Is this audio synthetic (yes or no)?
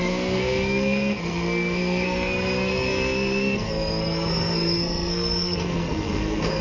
yes